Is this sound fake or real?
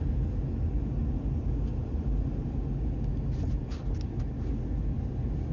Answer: real